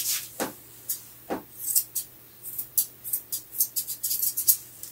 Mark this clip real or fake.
real